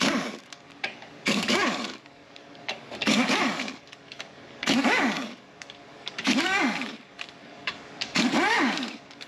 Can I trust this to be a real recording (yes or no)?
no